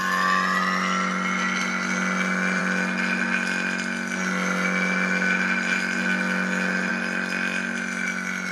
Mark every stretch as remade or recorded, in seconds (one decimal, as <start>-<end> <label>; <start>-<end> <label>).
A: 0.0-8.5 recorded